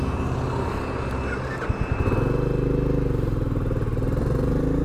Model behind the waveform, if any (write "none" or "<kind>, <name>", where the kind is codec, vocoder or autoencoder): none